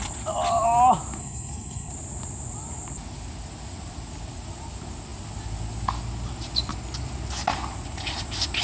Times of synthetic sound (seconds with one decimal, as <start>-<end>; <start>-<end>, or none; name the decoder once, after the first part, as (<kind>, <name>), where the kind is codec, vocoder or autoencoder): 1.2-1.9 (codec, SNAC)